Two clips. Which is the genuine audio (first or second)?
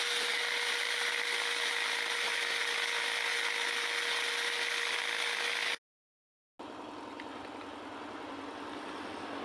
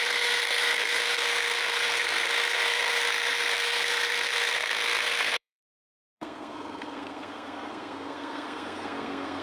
first